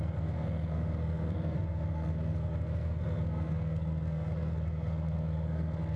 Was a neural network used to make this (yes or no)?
yes